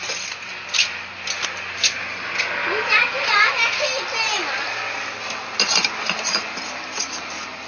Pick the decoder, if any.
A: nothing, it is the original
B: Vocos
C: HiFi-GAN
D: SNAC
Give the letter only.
A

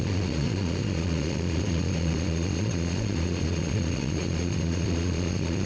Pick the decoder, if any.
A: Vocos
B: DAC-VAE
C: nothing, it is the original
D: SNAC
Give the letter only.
A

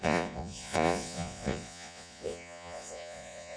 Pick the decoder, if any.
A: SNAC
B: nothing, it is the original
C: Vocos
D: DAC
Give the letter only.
C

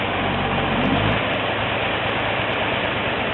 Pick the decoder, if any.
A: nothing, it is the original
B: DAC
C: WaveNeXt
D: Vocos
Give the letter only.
A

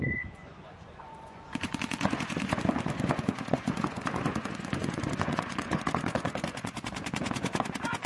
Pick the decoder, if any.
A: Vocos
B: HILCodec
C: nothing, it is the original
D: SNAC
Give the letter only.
A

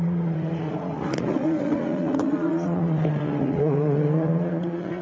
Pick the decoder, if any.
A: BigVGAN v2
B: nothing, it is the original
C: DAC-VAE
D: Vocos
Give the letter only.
D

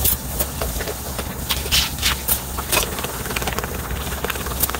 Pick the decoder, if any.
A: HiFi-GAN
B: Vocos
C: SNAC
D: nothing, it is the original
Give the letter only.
D